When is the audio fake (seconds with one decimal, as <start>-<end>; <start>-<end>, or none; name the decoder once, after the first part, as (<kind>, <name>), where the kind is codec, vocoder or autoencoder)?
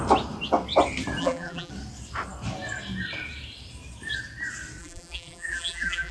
1.2-1.7 (vocoder, BigVGAN v2); 4.8-6.1